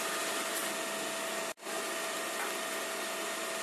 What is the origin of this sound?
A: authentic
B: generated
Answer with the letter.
A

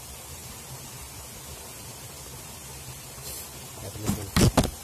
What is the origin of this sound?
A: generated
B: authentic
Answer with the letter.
B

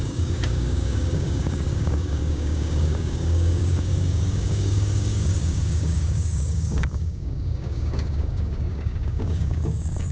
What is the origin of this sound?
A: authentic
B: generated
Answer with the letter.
B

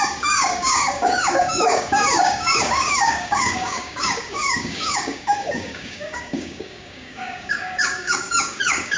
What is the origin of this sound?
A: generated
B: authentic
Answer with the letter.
A